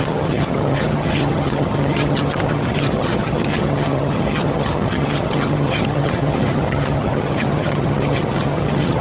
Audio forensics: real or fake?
fake